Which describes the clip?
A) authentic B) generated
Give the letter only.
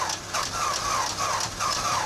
A